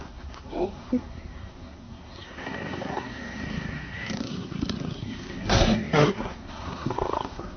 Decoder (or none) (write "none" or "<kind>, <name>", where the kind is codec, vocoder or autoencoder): codec, SNAC